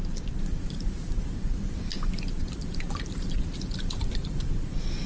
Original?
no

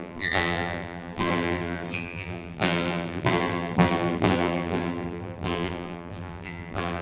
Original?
no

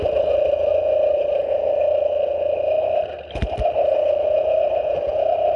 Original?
yes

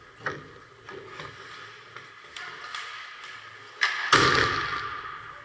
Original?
yes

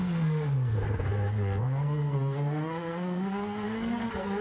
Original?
no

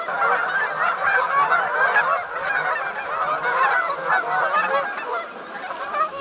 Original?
yes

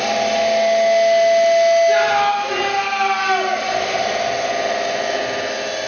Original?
yes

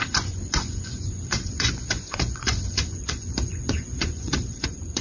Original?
no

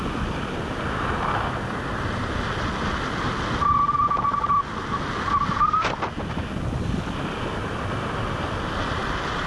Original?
yes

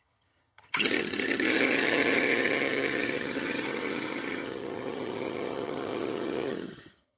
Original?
no